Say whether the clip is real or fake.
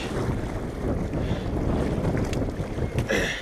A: real